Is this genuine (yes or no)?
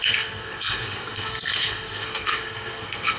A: no